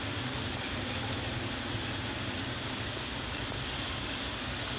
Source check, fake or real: real